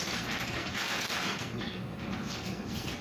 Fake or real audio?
fake